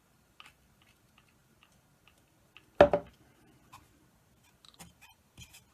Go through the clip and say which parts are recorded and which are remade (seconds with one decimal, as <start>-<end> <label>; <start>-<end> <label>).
0.0-5.7 recorded